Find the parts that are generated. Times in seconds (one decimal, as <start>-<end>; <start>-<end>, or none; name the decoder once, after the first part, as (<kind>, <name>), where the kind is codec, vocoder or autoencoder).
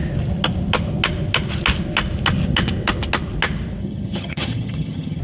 3.8-5.2 (vocoder, HiFi-GAN)